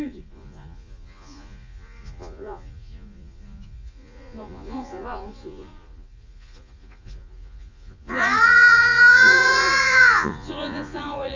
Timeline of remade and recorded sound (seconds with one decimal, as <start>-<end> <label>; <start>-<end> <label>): 0.0-11.4 remade